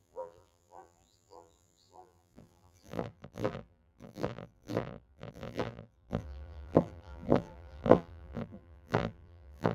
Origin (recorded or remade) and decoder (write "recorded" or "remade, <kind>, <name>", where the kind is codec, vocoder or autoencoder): remade, vocoder, BigVGAN v2